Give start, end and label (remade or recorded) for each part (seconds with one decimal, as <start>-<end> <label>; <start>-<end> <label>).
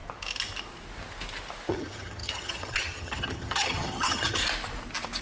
0.0-1.7 recorded; 1.7-4.4 remade; 4.4-5.2 recorded